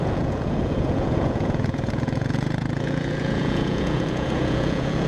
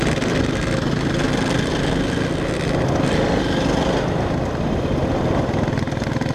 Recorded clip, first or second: second